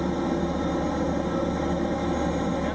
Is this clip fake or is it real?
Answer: real